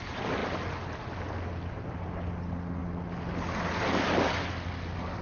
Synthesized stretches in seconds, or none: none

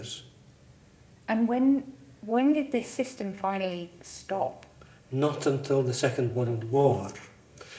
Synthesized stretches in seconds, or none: 2.3-5.1 (codec, SNAC); 6.3-7.8

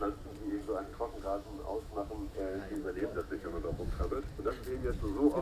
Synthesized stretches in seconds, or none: 0.9-4.1 (autoencoder, DAC-VAE)

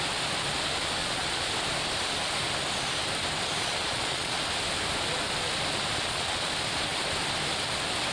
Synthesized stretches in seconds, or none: 1.0-1.5 (vocoder, Vocos); 3.6-4.4; 5.9-6.5

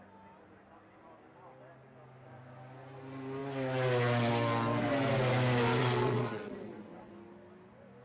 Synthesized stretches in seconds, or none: 5.8-7.1 (vocoder, WaveNeXt)

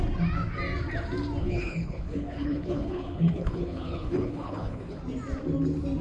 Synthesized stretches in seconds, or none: 1.4-5.0 (codec, HILCodec)

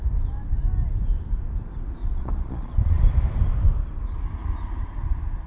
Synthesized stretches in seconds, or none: 2.0-3.0 (vocoder, Vocos)

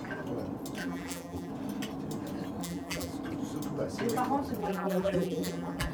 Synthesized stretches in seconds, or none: 0.8-1.5 (vocoder, BigVGAN v2); 2.6-3.1; 4.6-5.9